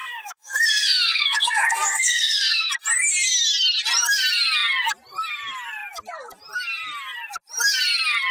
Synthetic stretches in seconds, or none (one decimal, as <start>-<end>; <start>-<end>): 0.0-2.7